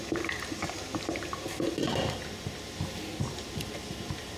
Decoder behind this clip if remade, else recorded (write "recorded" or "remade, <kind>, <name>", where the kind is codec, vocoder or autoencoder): recorded